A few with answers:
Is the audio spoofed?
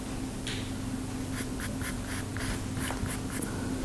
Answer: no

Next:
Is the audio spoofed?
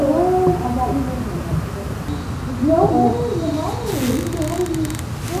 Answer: no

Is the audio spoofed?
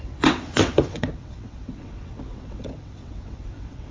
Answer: yes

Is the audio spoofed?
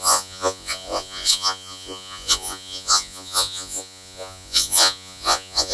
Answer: yes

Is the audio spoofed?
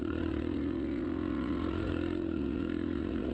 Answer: yes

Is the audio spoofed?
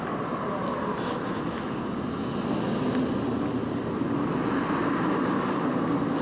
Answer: no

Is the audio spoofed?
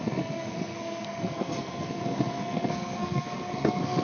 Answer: yes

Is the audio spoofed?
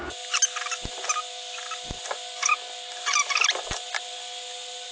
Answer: no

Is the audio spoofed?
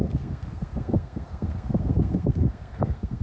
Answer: yes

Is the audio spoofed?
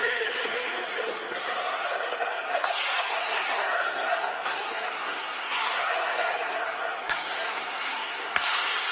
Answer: yes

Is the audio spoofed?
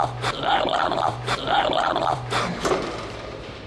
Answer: yes